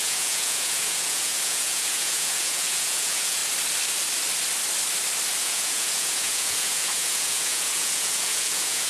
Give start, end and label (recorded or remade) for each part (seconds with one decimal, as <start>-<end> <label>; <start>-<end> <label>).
0.0-3.4 remade; 3.4-5.4 recorded; 5.4-8.9 remade